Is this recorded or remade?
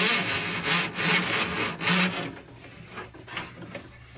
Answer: recorded